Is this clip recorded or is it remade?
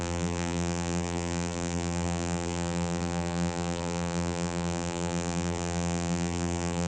remade